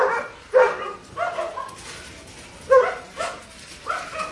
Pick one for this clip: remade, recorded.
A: recorded